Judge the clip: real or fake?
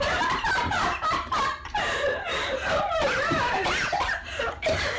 fake